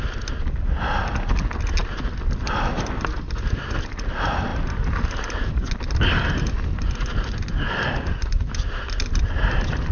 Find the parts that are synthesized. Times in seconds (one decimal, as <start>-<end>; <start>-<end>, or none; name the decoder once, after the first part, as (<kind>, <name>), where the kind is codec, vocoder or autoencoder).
none